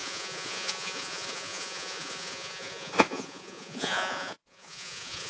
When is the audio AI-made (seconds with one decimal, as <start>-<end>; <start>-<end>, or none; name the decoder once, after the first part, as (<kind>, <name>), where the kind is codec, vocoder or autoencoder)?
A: 0.0-5.3 (vocoder, Vocos)

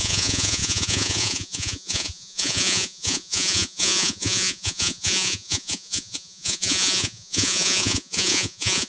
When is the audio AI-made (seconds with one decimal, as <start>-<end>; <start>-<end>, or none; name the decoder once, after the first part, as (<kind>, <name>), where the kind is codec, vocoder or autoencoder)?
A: 0.0-8.9 (vocoder, Vocos)

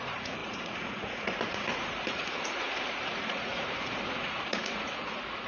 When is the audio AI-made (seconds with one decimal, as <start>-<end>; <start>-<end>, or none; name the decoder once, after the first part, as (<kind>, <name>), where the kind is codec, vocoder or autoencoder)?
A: 0.0-5.5 (vocoder, Vocos)

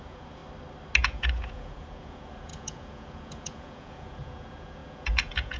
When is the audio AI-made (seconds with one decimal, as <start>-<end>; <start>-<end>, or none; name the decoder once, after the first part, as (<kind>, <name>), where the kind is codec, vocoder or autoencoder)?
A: 0.0-0.4 (vocoder, Vocos); 1.0-5.6

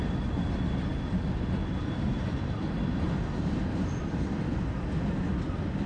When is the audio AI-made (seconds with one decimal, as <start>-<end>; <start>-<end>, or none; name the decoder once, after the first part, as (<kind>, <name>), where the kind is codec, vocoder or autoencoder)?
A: none

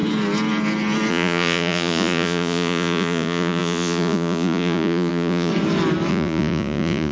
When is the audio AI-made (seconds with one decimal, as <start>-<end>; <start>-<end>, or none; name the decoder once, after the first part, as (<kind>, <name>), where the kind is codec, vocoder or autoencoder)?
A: 1.1-5.5 (vocoder, Vocos); 6.1-7.1

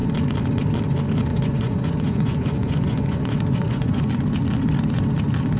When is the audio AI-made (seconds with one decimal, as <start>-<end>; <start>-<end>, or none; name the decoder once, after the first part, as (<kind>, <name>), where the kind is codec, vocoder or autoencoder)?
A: 1.3-4.1 (vocoder, Vocos)